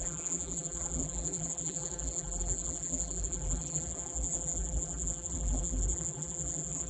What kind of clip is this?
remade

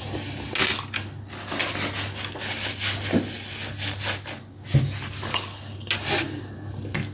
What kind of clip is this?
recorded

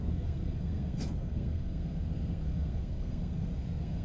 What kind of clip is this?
remade